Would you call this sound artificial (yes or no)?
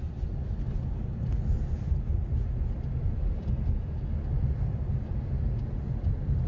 no